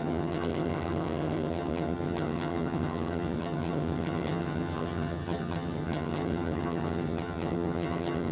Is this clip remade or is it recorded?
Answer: remade